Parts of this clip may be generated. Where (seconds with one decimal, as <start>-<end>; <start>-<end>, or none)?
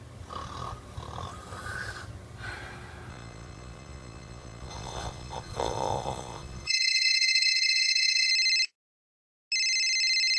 3.1-8.3